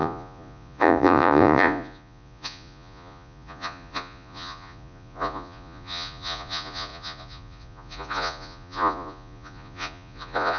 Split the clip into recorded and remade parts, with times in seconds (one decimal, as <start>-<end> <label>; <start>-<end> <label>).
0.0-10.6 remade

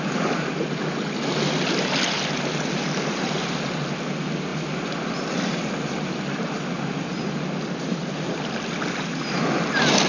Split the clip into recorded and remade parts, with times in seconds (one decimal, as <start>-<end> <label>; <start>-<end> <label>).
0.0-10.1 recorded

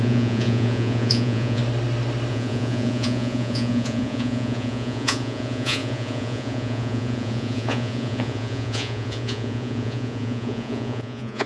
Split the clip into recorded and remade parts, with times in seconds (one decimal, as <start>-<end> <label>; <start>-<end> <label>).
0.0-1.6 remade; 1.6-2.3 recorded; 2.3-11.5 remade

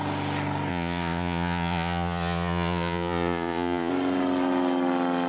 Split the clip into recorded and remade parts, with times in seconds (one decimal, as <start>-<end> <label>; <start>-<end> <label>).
0.0-0.7 recorded; 0.7-3.9 remade; 3.9-5.3 recorded

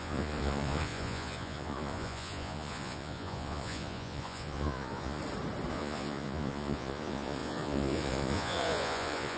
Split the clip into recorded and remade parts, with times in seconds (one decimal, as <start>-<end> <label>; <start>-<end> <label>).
0.0-5.2 remade; 5.2-5.7 recorded; 5.7-9.4 remade

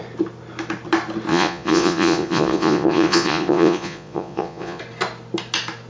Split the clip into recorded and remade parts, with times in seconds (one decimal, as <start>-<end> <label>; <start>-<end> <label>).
0.0-1.3 recorded; 1.3-4.8 remade; 4.8-5.9 recorded